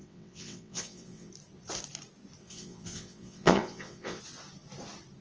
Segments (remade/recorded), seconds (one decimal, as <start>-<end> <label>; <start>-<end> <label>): 0.0-1.3 remade; 1.3-2.4 recorded; 2.4-4.2 remade; 4.2-5.2 recorded